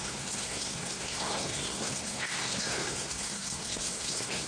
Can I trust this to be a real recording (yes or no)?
no